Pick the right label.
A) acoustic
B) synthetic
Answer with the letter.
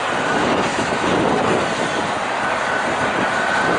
A